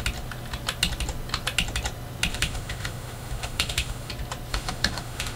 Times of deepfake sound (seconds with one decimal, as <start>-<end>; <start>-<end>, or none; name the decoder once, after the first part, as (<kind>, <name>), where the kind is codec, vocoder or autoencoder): 2.3-4.1 (autoencoder, DAC-VAE); 4.5-5.4